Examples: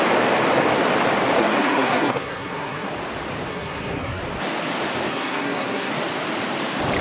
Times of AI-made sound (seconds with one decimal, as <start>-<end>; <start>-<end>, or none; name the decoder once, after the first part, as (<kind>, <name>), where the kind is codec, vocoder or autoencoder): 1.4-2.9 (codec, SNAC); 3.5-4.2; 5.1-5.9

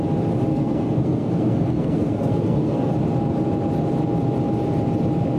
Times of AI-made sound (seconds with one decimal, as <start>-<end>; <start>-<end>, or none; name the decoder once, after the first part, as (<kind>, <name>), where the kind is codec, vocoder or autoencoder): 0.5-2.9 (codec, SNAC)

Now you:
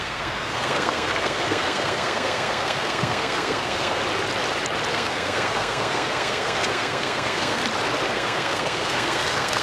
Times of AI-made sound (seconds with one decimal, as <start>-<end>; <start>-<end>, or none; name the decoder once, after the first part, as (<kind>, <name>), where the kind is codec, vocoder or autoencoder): 0.0-4.0 (codec, SNAC); 4.9-7.6; 8.1-9.6